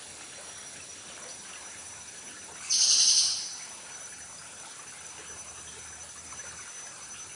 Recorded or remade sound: recorded